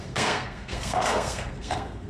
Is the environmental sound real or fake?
fake